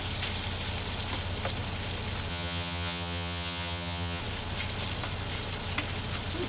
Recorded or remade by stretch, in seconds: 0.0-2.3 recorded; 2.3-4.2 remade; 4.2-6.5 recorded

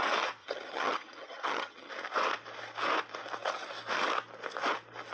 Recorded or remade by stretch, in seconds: 0.0-0.4 recorded; 0.4-1.9 remade; 1.9-5.1 recorded

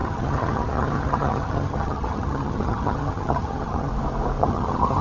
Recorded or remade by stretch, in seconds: 0.0-3.9 remade; 3.9-4.4 recorded; 4.4-5.0 remade